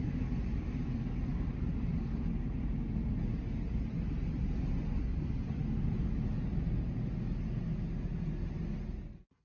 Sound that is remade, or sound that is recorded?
recorded